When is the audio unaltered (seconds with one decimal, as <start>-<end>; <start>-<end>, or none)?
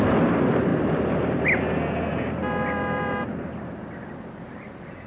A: 0.0-5.1